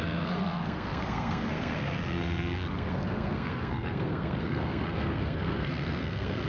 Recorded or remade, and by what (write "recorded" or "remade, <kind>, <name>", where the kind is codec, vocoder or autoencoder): remade, codec, SNAC